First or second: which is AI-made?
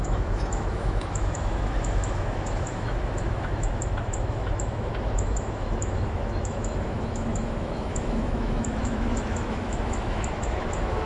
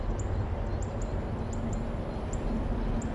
first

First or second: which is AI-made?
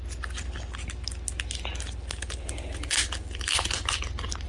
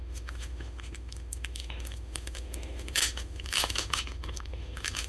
second